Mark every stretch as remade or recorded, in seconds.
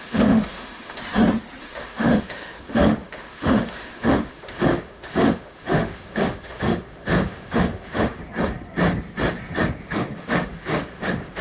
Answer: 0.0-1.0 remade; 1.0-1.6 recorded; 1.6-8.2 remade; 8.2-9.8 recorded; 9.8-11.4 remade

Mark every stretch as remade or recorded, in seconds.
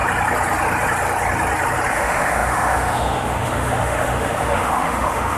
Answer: 0.0-1.9 recorded; 1.9-5.4 remade